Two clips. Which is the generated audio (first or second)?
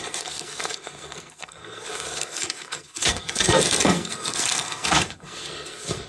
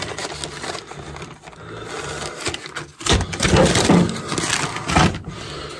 first